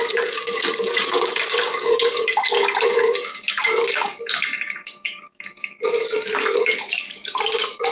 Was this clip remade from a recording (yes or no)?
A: yes